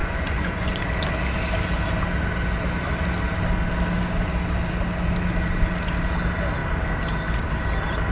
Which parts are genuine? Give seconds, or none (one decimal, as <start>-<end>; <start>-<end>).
0.8-8.1